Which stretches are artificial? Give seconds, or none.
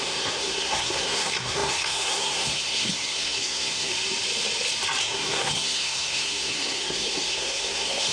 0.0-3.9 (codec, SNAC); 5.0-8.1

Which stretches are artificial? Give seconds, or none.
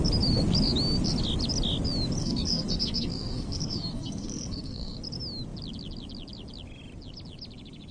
2.2-5.0 (codec, SNAC)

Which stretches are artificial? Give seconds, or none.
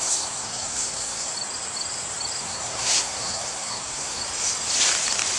0.0-1.3 (codec, SNAC); 2.4-4.2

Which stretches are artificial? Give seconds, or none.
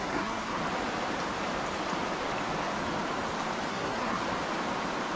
0.0-0.6 (codec, SNAC); 3.7-4.2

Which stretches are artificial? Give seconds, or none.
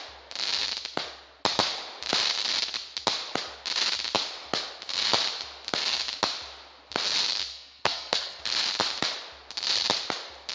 7.5-8.4 (codec, SNAC)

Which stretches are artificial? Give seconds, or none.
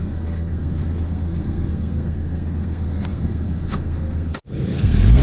0.0-5.2 (codec, SNAC)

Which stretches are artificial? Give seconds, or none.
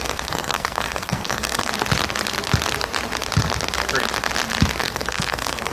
0.0-1.7 (codec, SNAC); 4.8-5.7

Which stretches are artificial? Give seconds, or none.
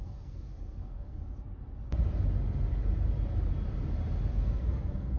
0.0-1.2 (codec, SNAC); 4.3-5.2